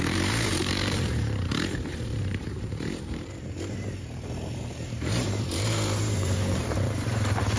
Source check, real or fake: fake